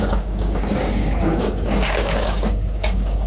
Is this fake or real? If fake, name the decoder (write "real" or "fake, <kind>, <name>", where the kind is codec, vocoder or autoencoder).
fake, codec, DAC